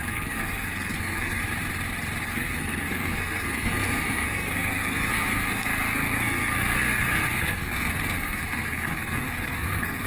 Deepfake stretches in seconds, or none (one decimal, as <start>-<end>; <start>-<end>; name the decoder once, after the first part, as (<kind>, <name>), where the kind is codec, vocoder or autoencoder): 0.0-1.4 (codec, SNAC); 2.2-10.1